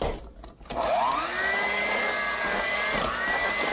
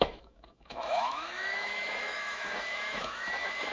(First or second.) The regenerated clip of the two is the second